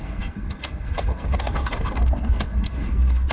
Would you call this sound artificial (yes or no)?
yes